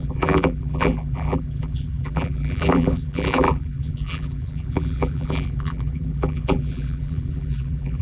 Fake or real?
fake